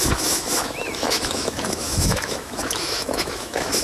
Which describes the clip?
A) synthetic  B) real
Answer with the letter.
A